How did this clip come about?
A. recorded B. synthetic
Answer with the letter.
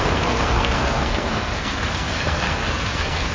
B